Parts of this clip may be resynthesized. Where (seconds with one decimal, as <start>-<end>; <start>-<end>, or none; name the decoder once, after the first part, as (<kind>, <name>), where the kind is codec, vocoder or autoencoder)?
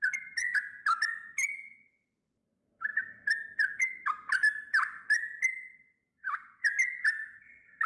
none